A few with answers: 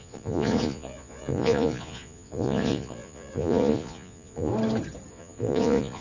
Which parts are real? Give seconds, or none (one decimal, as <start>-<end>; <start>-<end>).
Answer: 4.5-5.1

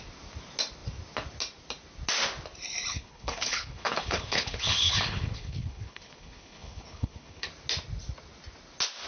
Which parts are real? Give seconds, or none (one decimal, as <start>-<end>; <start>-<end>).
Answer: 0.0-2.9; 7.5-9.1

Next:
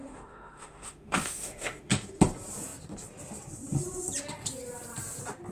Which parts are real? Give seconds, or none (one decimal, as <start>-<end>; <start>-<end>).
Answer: 2.2-5.5